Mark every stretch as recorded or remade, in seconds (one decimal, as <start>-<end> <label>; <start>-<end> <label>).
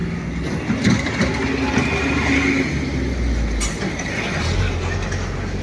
0.0-5.6 recorded